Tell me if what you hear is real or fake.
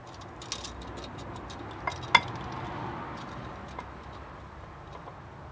real